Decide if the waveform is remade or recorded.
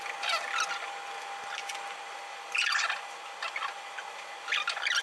recorded